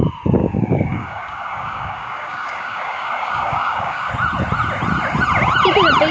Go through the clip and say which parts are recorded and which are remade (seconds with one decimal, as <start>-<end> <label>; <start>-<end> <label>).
0.0-0.4 recorded; 0.4-4.1 remade; 4.1-6.1 recorded